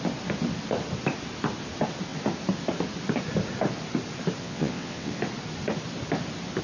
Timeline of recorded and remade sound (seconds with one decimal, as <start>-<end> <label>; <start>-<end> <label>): 0.0-4.4 recorded; 4.4-5.1 remade; 5.1-6.6 recorded